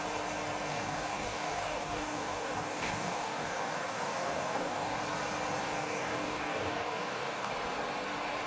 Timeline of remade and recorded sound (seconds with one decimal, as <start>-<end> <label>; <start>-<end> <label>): 0.0-0.7 recorded; 0.7-5.0 remade; 5.0-5.6 recorded; 5.6-7.5 remade; 7.5-8.5 recorded